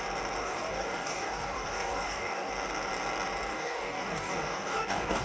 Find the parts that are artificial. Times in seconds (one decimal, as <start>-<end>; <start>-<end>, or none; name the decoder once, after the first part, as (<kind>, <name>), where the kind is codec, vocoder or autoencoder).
0.4-2.5 (codec, DAC); 3.5-5.2